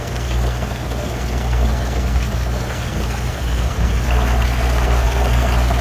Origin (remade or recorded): remade